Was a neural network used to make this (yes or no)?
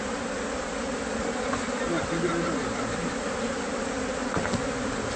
no